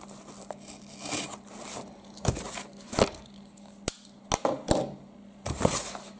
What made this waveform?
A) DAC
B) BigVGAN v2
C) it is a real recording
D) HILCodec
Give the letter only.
C